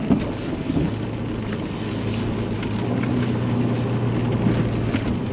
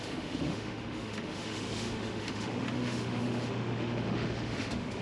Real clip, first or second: first